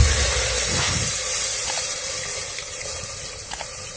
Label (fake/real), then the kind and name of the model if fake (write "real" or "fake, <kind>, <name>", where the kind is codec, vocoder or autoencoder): real